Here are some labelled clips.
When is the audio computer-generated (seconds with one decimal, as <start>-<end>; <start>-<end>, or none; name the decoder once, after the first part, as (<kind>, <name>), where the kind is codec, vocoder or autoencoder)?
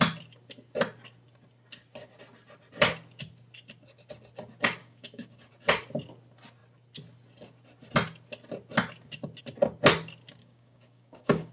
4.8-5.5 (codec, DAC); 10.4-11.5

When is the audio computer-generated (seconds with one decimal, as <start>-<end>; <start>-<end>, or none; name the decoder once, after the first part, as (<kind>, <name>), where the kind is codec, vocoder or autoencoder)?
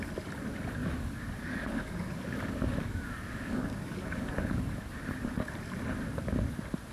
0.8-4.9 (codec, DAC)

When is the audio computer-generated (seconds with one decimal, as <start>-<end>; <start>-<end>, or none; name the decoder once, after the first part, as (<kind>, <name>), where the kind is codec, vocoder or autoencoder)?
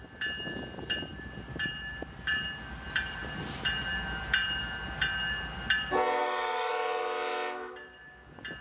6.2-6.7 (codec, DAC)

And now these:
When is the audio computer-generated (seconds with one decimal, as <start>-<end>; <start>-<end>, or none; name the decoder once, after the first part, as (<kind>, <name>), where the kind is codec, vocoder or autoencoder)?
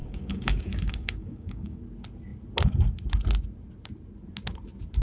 0.0-1.8 (codec, DAC)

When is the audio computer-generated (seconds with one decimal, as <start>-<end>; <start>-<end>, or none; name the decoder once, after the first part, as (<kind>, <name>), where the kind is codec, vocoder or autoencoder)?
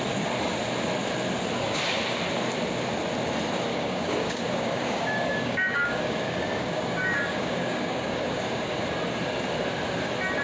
3.7-8.8 (codec, DAC)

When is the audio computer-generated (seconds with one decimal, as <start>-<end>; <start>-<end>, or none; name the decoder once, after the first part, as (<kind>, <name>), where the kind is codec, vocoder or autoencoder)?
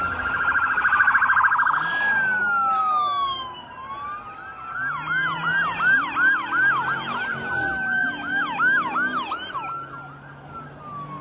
0.0-2.4 (codec, DAC); 2.8-3.7